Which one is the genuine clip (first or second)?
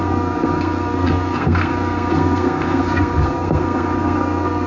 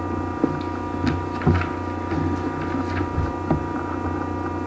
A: second